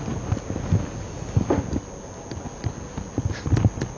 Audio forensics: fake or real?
real